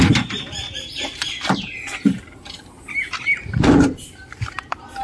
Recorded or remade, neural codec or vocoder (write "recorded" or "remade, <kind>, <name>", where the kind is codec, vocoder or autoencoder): remade, vocoder, BigVGAN v2